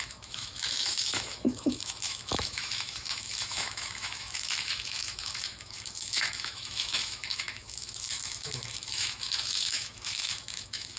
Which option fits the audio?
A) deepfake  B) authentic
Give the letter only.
A